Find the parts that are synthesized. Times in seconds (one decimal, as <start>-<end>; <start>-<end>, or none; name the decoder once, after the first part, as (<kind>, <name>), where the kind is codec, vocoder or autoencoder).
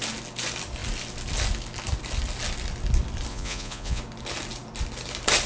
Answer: 3.3-4.0 (vocoder, Vocos)